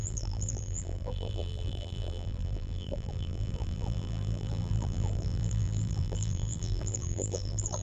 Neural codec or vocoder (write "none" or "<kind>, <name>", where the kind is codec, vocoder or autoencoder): vocoder, BigVGAN v2